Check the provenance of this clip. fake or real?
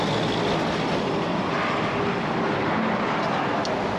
real